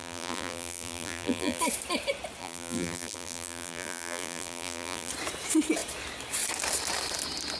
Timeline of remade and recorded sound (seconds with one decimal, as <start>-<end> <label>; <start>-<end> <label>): 0.0-1.6 remade; 1.6-2.4 recorded; 2.4-5.1 remade; 5.1-7.6 recorded